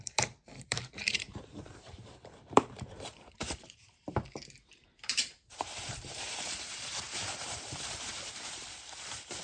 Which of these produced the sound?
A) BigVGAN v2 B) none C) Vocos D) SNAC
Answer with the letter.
A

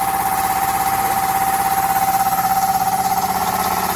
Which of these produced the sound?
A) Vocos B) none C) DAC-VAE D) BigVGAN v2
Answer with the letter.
D